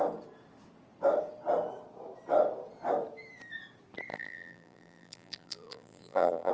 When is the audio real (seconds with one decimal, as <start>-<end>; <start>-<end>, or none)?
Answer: 0.0-4.1